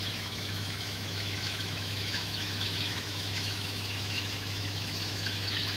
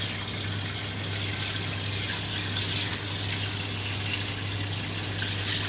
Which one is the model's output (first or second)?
first